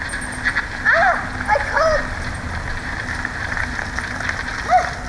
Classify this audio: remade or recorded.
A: recorded